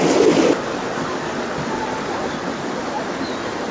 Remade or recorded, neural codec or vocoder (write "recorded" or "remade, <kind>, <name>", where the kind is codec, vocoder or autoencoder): recorded